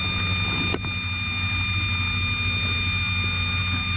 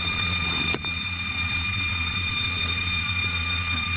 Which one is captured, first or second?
first